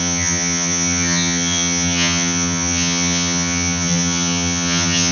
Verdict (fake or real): fake